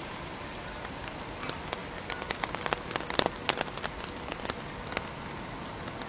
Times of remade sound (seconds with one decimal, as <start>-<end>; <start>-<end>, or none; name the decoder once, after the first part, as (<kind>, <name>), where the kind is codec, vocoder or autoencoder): none